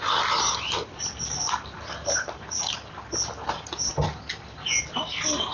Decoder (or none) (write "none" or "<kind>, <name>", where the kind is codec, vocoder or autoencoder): none